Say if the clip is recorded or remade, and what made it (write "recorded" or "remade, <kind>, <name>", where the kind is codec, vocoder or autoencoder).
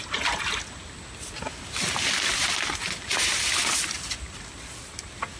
recorded